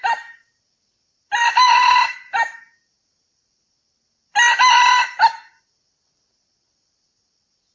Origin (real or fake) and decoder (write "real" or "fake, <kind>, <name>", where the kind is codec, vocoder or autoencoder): real